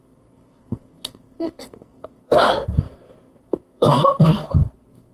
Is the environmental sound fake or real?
fake